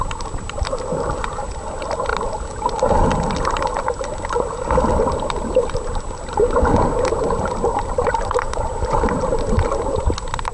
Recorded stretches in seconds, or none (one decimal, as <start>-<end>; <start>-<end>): 0.0-7.7; 9.1-10.5